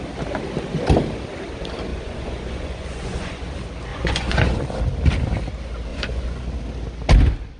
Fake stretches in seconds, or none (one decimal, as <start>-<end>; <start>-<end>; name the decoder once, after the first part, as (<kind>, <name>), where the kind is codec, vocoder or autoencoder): 1.9-3.5 (vocoder, Vocos); 3.9-4.8; 5.9-6.5